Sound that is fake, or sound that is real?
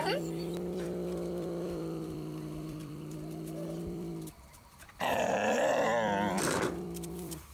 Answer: fake